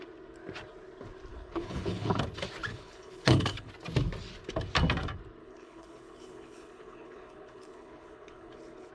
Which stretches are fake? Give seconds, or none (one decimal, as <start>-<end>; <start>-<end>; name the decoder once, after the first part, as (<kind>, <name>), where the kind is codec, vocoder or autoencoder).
1.3-2.2 (codec, HILCodec); 2.7-3.7; 5.4-8.9